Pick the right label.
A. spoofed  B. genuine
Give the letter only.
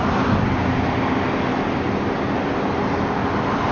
B